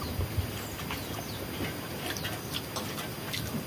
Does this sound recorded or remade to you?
recorded